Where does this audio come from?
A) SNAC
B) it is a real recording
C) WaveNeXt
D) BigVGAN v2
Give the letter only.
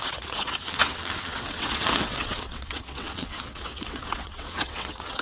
C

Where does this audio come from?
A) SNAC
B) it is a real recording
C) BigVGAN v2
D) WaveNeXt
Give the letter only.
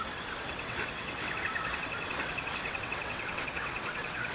D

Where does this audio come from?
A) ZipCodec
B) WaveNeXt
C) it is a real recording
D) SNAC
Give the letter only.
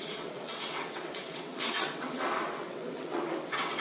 B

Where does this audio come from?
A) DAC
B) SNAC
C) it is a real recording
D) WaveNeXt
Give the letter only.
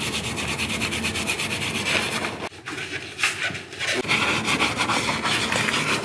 C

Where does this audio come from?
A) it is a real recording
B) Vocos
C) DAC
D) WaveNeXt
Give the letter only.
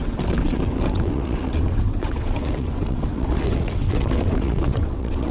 D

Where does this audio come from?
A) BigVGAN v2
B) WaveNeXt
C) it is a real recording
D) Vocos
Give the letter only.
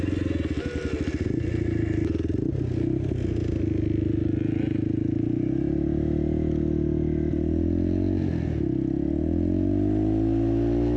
C